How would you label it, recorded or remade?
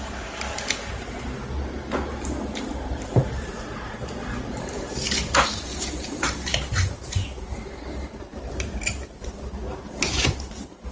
remade